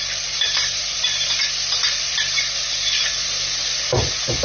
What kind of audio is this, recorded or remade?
remade